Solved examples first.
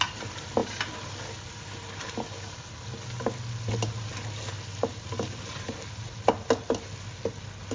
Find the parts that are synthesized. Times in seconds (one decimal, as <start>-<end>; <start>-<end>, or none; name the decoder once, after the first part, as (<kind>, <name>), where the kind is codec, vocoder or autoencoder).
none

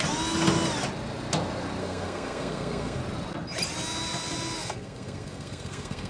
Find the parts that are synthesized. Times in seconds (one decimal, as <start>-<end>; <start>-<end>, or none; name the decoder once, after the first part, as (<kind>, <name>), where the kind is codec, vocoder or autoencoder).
1.8-3.0 (codec, SNAC); 4.6-6.1

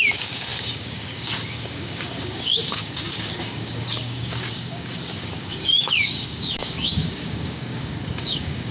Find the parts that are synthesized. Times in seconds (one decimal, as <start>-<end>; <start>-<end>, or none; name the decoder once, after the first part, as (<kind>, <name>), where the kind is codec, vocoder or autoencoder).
0.0-8.7 (codec, DAC)